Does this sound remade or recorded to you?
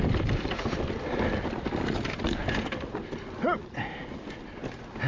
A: recorded